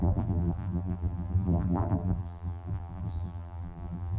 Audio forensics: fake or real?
fake